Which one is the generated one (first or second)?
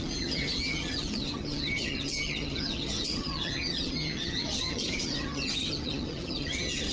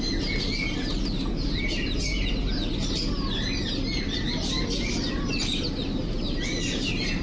first